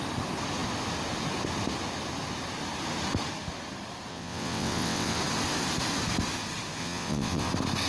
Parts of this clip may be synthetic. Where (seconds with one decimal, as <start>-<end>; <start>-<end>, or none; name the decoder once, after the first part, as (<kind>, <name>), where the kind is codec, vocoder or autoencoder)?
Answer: 4.1-5.2 (vocoder, WaveNeXt); 6.8-7.5